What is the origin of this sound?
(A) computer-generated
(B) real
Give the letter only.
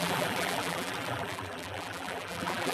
A